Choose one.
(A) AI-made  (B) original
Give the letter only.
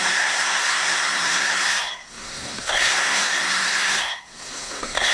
A